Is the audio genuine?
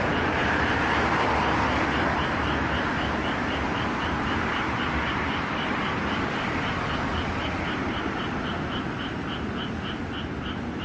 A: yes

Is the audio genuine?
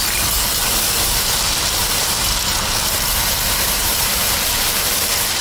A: no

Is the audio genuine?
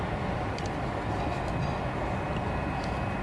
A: yes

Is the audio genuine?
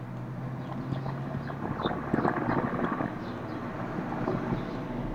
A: yes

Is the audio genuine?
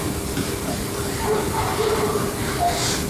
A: yes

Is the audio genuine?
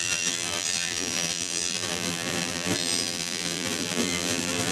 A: no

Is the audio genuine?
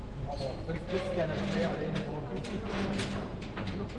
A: no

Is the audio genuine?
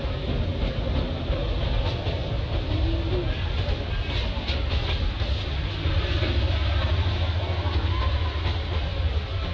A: yes